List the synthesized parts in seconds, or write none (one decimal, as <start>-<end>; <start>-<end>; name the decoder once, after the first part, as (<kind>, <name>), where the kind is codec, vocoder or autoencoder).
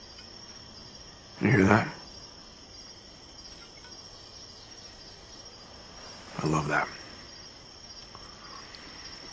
0.8-2.9 (vocoder, BigVGAN v2); 8.0-8.6